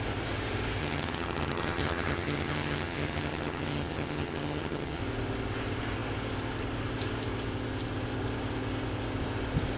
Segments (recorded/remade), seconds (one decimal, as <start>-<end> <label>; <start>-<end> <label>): 0.0-0.8 recorded; 0.8-5.0 remade; 5.0-9.8 recorded

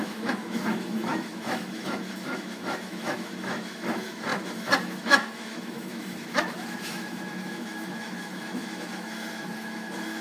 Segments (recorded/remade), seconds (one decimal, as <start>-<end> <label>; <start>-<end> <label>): 0.0-10.2 remade

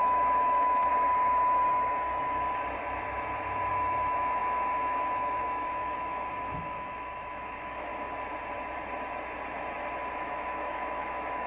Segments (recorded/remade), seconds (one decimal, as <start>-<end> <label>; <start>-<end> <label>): 0.0-0.9 remade; 0.9-3.7 recorded; 3.7-7.9 remade; 7.9-10.1 recorded; 10.1-11.5 remade

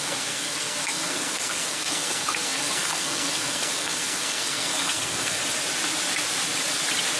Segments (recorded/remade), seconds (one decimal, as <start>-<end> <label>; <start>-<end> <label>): 0.0-5.4 remade; 5.4-7.2 recorded

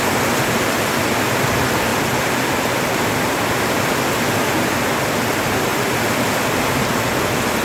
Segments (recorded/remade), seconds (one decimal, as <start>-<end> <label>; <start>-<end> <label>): 0.0-1.9 recorded; 1.9-4.5 remade; 4.5-5.7 recorded; 5.7-6.3 remade; 6.3-7.6 recorded